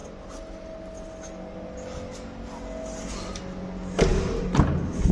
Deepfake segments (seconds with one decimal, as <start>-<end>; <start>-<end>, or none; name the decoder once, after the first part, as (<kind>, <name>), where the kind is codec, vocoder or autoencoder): none